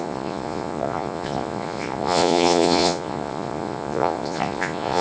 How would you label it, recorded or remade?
remade